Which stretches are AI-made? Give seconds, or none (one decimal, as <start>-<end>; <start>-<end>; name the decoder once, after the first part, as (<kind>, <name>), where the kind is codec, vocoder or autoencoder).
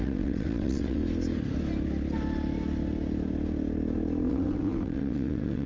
0.0-1.0 (vocoder, WaveNeXt); 4.3-5.7